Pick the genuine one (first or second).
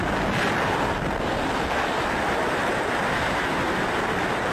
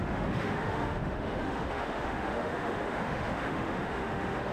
first